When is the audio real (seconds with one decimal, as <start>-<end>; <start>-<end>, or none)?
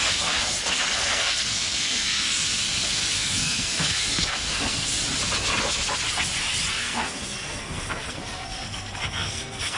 5.0-6.7